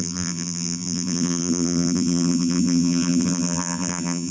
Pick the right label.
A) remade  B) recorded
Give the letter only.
A